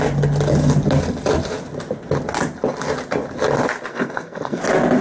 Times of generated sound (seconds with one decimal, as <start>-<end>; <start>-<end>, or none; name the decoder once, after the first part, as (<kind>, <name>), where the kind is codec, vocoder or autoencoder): 3.9-4.6 (codec, SNAC)